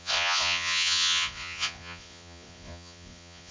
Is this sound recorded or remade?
remade